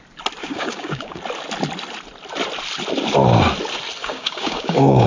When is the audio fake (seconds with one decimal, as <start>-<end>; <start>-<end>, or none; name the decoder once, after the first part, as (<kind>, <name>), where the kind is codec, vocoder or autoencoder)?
0.4-1.2 (codec, DAC); 4.0-5.1